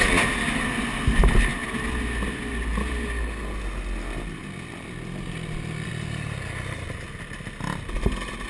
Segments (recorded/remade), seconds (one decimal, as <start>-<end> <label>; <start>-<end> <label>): 0.0-8.5 recorded